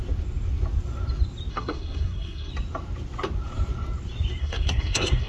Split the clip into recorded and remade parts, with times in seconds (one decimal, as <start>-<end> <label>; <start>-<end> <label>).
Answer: 0.0-1.5 recorded; 1.5-2.5 remade; 2.5-4.4 recorded; 4.4-5.3 remade